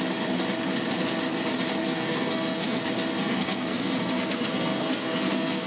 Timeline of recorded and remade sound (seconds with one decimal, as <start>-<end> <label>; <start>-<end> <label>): 0.0-1.8 recorded; 1.8-2.8 remade; 2.8-3.2 recorded; 3.2-5.7 remade